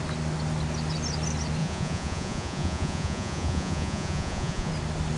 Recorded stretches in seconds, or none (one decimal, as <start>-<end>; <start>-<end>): 0.0-1.6; 4.7-5.2